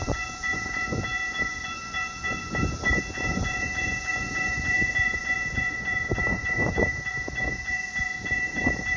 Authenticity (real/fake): fake